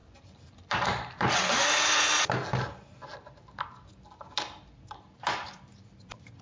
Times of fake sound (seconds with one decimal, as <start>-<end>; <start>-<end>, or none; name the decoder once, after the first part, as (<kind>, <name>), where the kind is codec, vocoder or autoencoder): 0.0-1.3 (vocoder, BigVGAN v2)